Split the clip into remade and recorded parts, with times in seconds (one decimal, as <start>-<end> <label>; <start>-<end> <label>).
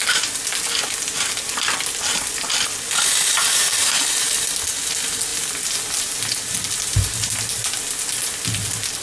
0.0-9.0 recorded